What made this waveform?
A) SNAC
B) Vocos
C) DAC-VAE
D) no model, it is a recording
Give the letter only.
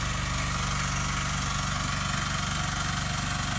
D